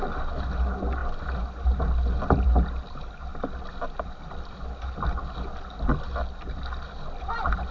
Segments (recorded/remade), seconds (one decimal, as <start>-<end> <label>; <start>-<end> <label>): 0.0-7.7 recorded

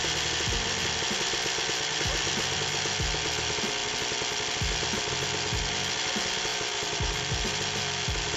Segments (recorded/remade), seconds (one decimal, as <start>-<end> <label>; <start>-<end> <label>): 0.0-6.5 recorded; 6.5-8.4 remade

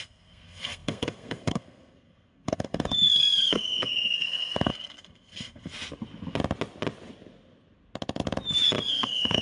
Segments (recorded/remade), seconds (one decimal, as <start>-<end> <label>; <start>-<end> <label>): 0.0-5.7 remade; 5.7-8.9 recorded; 8.9-9.4 remade